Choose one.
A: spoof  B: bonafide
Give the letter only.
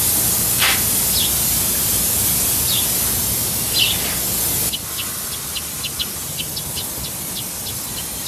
B